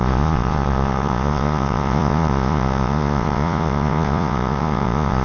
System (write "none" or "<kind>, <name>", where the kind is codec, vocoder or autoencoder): vocoder, Vocos